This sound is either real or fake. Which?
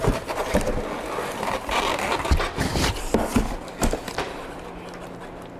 real